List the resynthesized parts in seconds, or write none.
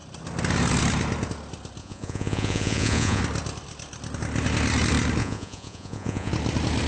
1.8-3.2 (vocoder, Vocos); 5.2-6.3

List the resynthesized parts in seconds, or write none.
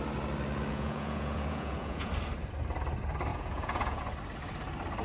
0.7-2.1 (vocoder, Vocos); 3.3-4.0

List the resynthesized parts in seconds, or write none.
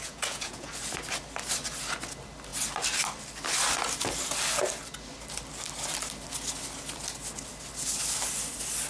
0.0-0.7 (vocoder, Vocos)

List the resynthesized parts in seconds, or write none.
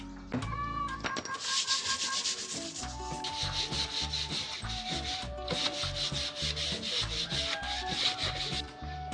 none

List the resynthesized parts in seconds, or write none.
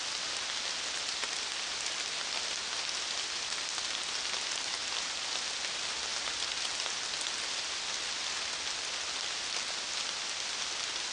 none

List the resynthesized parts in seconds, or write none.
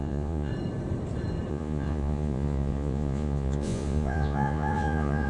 0.0-0.5 (vocoder, Vocos); 1.5-5.3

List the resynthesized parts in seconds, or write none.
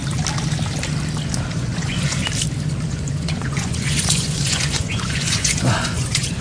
1.5-2.2 (vocoder, Vocos); 2.9-6.4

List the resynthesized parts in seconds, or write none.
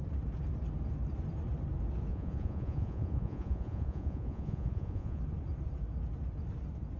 2.1-5.2 (vocoder, Vocos)